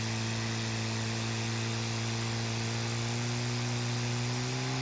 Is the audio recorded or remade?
recorded